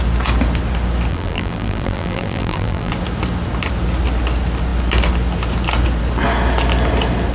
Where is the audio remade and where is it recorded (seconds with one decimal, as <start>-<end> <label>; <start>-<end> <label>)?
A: 0.0-1.1 recorded; 1.1-2.9 remade; 2.9-7.3 recorded